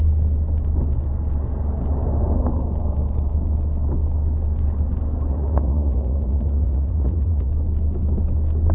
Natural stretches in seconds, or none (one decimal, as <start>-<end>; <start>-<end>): 0.0-5.3; 7.5-8.7